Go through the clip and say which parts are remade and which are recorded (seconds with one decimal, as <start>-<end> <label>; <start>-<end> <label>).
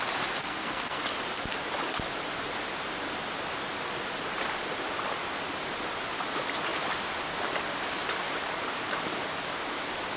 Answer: 0.0-0.4 recorded; 0.4-1.0 remade; 1.0-10.2 recorded